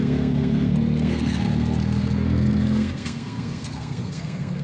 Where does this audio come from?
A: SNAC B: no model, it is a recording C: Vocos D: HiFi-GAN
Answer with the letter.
A